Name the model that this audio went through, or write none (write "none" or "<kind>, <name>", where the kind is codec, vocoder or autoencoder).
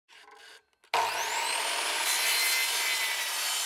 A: none